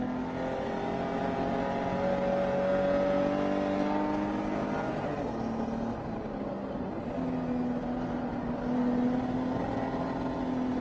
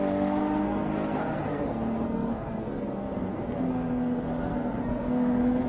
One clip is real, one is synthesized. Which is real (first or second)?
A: first